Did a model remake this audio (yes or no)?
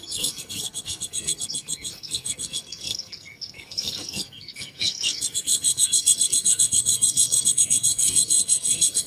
yes